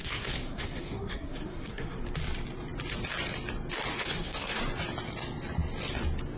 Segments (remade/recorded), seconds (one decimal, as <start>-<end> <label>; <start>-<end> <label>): 0.0-2.0 remade; 2.0-3.9 recorded; 3.9-4.6 remade; 4.6-6.4 recorded

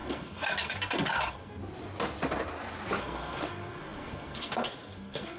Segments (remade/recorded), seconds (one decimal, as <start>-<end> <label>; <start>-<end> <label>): 0.0-1.6 remade; 1.6-3.0 recorded; 3.0-5.4 remade

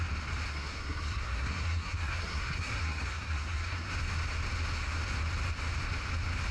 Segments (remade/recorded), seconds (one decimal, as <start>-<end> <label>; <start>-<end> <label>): 0.0-0.5 recorded; 0.5-3.9 remade; 3.9-6.5 recorded

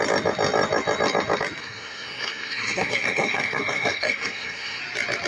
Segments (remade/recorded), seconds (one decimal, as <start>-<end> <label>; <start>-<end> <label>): 0.0-1.6 recorded; 1.6-4.8 remade; 4.8-5.3 recorded

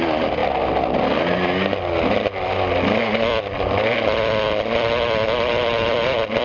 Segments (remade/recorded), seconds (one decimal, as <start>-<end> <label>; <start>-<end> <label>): 0.0-6.4 recorded